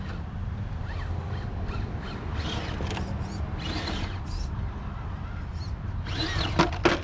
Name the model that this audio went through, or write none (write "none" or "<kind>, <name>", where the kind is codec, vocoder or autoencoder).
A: none